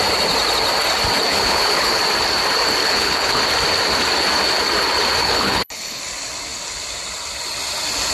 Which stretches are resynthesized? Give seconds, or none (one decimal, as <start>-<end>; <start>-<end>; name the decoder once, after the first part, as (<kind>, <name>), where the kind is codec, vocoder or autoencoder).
1.3-2.0 (codec, HILCodec); 2.8-3.4; 5.2-6.0